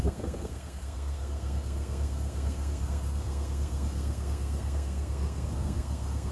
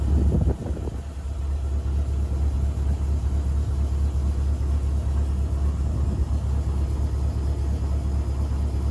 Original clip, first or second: second